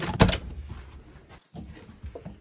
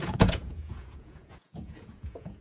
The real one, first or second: first